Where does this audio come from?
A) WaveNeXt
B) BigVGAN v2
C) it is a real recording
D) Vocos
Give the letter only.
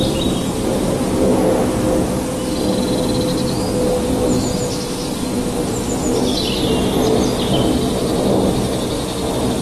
C